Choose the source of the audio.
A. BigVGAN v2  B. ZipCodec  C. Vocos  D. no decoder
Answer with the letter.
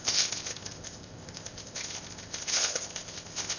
B